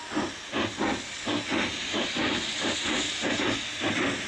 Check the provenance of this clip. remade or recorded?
recorded